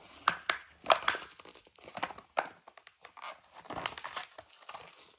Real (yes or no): yes